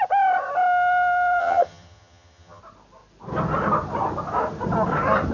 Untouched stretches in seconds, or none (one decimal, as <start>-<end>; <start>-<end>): 0.0-1.4; 2.6-5.3